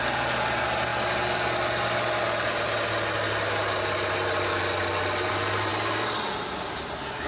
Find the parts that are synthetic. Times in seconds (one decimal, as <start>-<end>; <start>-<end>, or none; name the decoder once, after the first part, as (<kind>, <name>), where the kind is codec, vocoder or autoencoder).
none